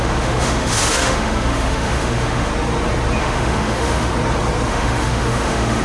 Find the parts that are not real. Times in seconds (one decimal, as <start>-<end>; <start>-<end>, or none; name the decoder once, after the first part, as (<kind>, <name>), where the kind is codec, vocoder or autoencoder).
0.0-2.5 (autoencoder, DAC-VAE); 3.2-4.1; 4.7-5.8